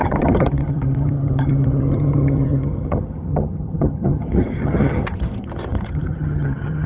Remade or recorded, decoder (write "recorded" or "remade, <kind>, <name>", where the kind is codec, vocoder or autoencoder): remade, vocoder, HiFi-GAN